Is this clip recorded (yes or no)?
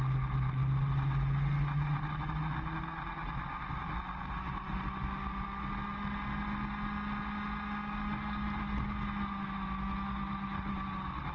yes